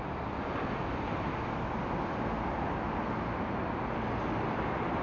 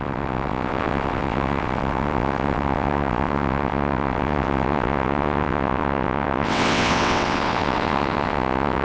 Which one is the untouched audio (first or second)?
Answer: first